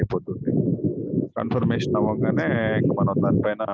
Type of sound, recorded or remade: recorded